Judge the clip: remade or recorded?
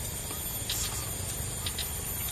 recorded